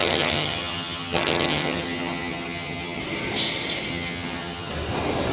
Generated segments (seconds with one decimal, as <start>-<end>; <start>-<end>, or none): 0.0-3.0; 3.9-4.7